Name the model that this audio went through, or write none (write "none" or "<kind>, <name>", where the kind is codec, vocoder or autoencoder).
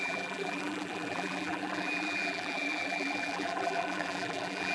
vocoder, BigVGAN v2